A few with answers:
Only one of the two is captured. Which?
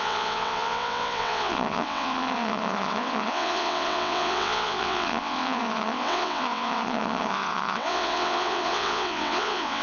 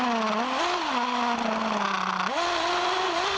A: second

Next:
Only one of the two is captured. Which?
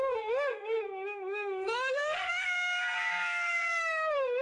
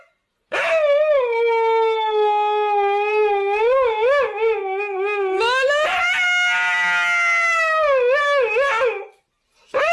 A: second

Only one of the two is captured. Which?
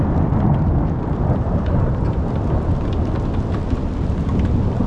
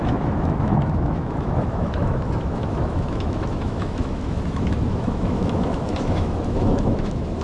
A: first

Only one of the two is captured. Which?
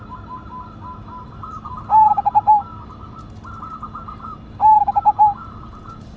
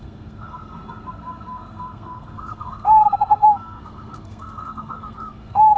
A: first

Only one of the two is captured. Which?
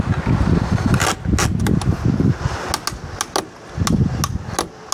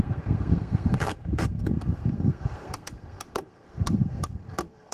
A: first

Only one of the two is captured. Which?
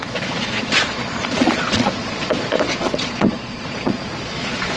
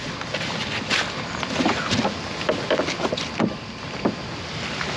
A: second